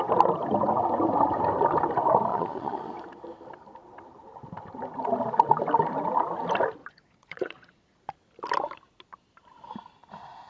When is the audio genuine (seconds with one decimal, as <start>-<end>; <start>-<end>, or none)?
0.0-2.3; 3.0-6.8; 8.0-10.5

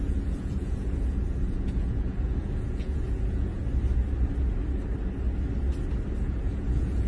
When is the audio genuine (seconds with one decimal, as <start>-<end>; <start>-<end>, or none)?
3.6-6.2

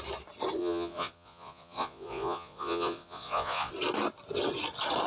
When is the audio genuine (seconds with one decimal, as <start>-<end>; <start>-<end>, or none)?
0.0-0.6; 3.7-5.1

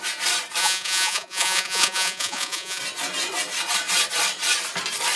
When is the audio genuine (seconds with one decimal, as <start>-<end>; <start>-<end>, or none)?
0.0-0.6; 2.8-5.2

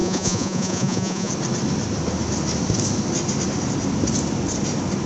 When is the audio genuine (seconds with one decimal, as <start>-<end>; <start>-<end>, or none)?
1.3-5.1